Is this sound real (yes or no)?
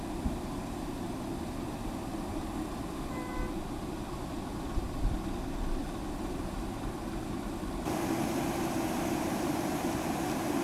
yes